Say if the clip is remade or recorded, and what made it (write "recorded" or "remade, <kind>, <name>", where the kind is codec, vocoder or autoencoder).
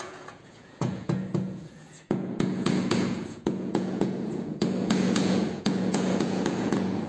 remade, vocoder, Vocos